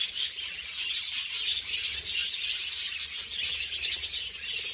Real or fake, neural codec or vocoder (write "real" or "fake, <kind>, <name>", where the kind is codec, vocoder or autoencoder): real